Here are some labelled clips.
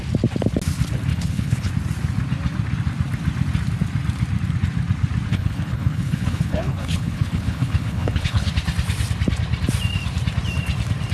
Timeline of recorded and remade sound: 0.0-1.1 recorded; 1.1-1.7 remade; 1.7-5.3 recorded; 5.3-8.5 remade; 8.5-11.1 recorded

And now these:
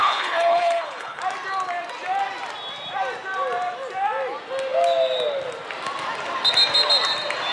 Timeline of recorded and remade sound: 0.0-1.2 remade; 1.2-7.5 recorded

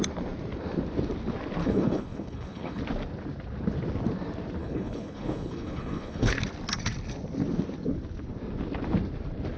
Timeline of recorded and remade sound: 0.0-1.6 recorded; 1.6-2.8 remade; 2.8-4.6 recorded; 4.6-6.3 remade; 6.3-9.6 recorded